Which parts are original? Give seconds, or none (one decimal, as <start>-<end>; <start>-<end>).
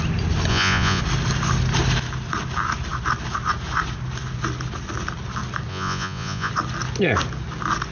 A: 0.0-0.5; 1.0-5.7; 6.5-7.9